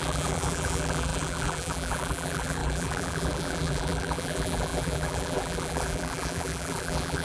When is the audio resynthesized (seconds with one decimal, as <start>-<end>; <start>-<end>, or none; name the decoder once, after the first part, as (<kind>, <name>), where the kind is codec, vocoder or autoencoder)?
0.0-7.2 (vocoder, BigVGAN v2)